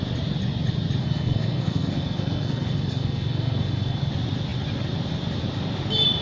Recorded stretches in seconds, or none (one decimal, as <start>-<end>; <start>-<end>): 0.0-1.0; 4.1-6.2